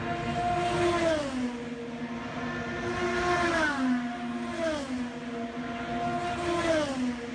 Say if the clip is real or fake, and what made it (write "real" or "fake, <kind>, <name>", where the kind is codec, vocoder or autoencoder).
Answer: real